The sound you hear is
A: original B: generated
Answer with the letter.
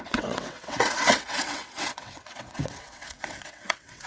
B